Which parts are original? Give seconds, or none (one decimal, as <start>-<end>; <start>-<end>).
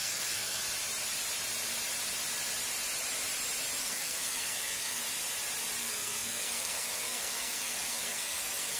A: 0.6-3.8; 5.0-5.8